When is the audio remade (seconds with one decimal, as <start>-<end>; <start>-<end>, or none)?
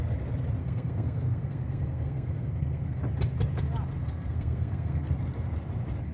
0.6-3.0; 4.0-5.1